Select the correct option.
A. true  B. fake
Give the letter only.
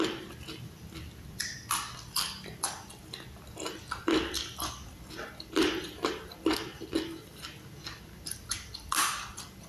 A